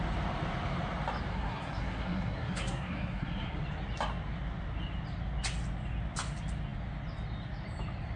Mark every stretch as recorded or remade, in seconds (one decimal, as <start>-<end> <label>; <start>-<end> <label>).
0.0-1.3 recorded; 1.3-3.6 remade; 3.6-8.2 recorded